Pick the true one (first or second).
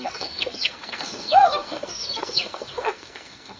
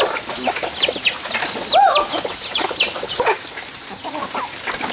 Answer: second